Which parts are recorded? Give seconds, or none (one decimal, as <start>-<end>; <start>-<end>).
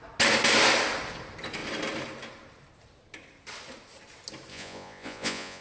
0.0-4.5